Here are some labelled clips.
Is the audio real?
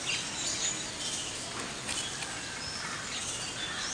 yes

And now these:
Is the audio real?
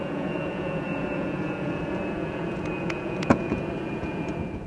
no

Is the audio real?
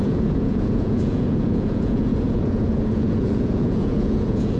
no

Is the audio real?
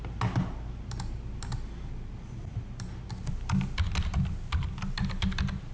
yes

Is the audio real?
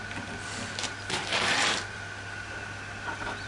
yes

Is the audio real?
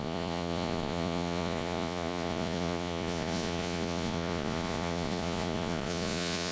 no